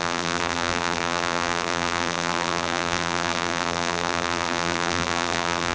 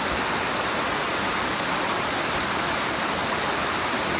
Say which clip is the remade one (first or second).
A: first